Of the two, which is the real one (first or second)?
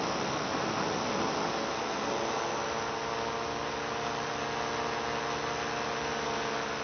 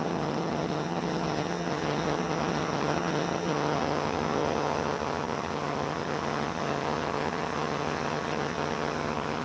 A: first